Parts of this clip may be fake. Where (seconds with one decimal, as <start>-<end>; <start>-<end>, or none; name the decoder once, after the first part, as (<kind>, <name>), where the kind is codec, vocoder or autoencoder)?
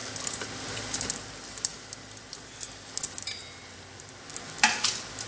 1.1-1.7 (vocoder, BigVGAN v2); 4.3-5.3